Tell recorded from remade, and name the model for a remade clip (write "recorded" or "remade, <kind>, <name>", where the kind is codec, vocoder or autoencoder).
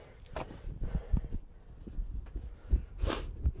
recorded